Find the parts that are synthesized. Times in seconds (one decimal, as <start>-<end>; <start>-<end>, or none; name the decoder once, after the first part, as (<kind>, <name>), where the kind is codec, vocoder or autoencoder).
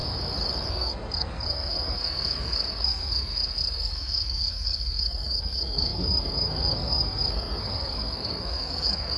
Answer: 0.7-9.2 (codec, SNAC)